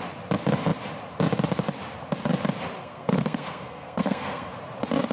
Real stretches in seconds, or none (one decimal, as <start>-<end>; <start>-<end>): 0.0-2.8; 4.5-5.1